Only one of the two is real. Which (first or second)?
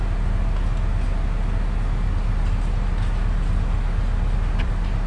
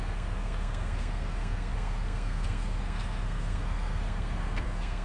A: first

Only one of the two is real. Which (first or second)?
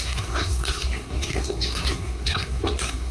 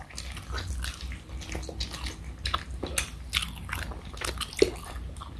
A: second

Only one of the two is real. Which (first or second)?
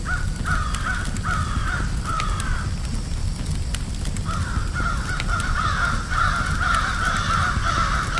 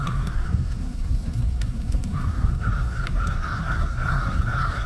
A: first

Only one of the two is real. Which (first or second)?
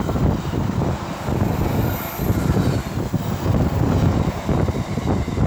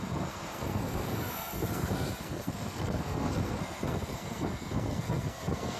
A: first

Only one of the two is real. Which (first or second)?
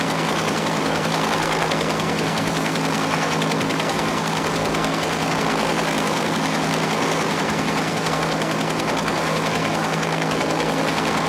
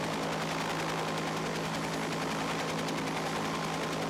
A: second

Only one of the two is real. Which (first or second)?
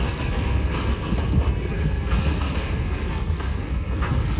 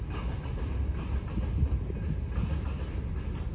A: second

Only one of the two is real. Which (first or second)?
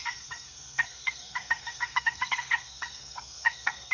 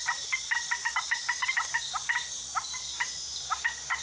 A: second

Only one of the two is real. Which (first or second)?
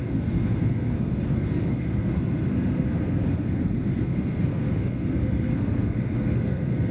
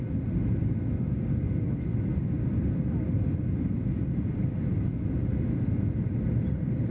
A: second